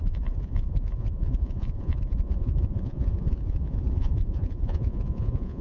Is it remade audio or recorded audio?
remade